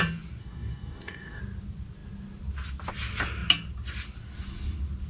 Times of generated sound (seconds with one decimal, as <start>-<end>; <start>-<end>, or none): 0.4-1.4

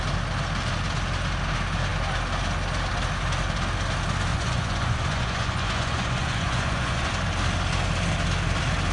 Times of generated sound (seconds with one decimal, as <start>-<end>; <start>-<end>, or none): 4.3-7.1